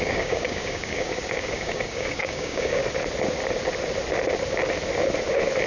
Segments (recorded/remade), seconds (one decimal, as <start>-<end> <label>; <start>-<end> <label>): 0.0-2.8 remade; 2.8-5.7 recorded